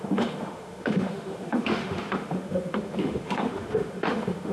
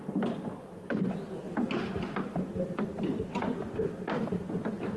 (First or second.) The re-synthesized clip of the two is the first